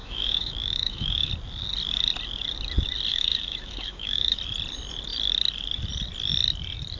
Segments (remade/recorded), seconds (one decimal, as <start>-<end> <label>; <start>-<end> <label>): 0.0-1.3 remade; 1.3-3.1 recorded; 3.1-4.4 remade; 4.4-7.0 recorded